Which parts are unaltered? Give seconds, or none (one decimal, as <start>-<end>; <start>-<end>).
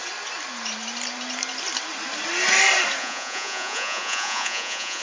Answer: 0.0-3.0